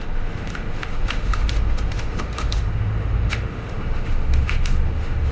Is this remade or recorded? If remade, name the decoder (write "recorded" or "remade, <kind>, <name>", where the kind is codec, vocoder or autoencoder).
remade, autoencoder, DAC-VAE